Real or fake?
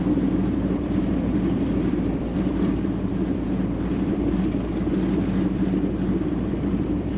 fake